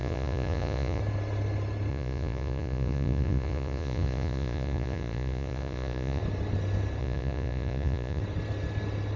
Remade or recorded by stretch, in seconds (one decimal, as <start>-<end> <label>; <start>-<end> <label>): 0.0-1.0 remade; 1.0-1.9 recorded; 1.9-6.2 remade; 6.2-7.0 recorded; 7.0-8.2 remade; 8.2-9.2 recorded